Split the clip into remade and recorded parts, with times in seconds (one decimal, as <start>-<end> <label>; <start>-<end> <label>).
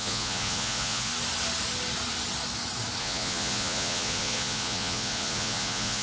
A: 0.0-1.1 remade; 1.1-3.0 recorded; 3.0-6.0 remade